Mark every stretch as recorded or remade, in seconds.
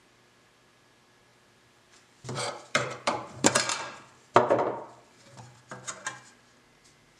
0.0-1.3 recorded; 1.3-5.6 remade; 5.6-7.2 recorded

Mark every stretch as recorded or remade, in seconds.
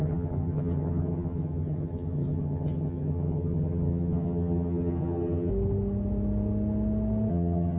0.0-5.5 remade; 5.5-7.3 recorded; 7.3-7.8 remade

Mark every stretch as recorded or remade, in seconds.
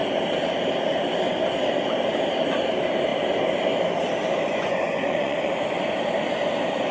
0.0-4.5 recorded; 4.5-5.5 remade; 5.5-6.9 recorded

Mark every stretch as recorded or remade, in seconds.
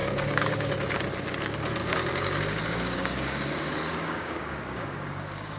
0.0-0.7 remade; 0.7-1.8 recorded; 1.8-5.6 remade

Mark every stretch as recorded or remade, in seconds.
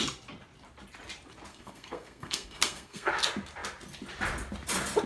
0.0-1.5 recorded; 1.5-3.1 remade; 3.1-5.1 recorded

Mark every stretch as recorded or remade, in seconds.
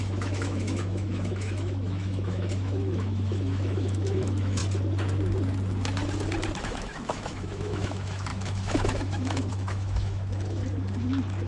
0.0-4.6 remade; 4.6-6.6 recorded; 6.6-10.6 remade; 10.6-11.5 recorded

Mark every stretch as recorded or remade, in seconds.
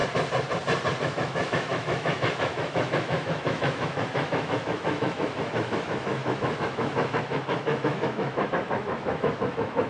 0.0-1.0 recorded; 1.0-9.9 remade